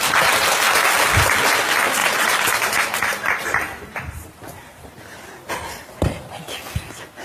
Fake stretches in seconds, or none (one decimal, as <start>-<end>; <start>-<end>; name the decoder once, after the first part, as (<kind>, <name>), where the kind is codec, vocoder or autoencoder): 2.0-5.5 (vocoder, BigVGAN v2)